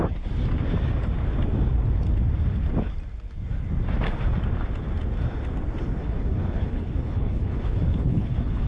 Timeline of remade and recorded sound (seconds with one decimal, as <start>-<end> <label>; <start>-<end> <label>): 0.0-6.0 recorded; 6.0-8.7 remade